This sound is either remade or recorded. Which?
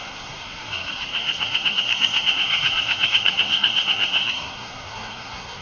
remade